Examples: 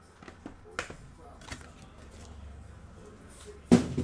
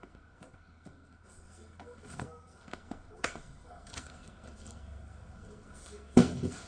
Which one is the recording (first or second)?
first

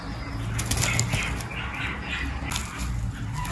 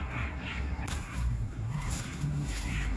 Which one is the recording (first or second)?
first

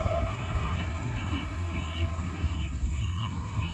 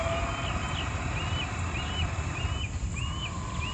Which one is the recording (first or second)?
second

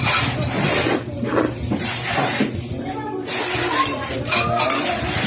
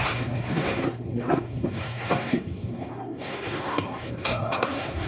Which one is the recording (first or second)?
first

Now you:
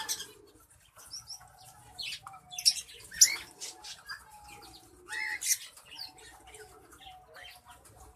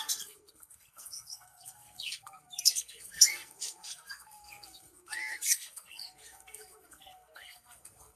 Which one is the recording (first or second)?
first